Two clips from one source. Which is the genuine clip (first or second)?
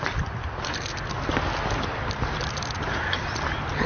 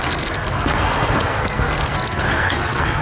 first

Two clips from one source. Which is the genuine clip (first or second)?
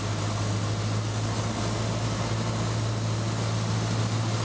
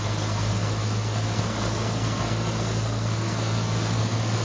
first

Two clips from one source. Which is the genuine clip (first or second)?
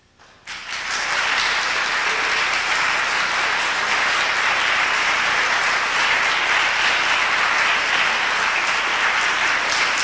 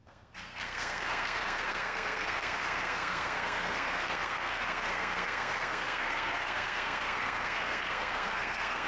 first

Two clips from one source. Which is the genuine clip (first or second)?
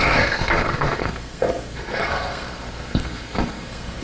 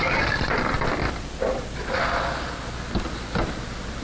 second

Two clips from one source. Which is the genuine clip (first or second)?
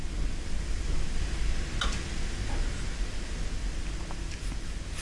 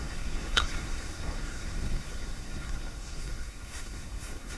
first